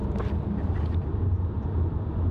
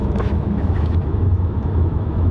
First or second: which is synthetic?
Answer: second